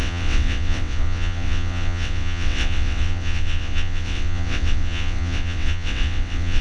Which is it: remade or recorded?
remade